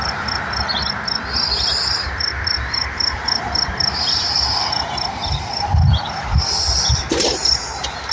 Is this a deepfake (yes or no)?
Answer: no